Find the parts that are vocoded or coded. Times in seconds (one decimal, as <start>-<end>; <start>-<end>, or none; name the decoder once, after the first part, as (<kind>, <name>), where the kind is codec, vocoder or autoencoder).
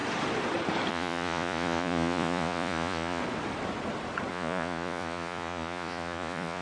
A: 0.9-3.2 (vocoder, Vocos); 4.3-6.6